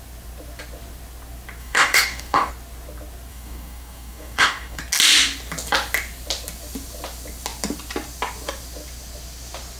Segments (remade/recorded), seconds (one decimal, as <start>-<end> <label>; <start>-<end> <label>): 0.0-1.6 recorded; 1.6-2.5 remade; 2.5-3.3 recorded; 3.3-4.8 remade; 4.8-9.8 recorded